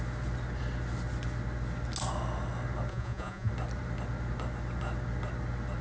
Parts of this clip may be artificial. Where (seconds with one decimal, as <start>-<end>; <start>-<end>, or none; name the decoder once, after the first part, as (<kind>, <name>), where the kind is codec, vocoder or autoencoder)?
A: 2.9-3.5 (vocoder, Vocos)